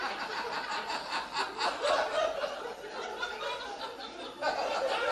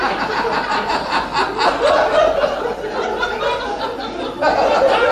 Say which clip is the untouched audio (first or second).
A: second